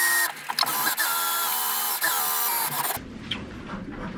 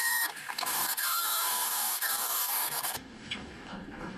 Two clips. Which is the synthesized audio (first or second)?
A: second